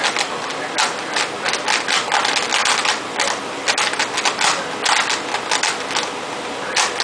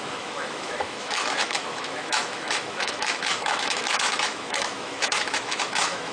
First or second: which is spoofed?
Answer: second